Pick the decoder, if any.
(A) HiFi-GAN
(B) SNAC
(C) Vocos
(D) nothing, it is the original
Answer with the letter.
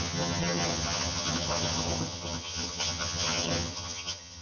A